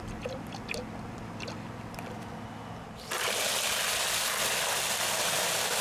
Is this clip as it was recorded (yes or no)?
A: yes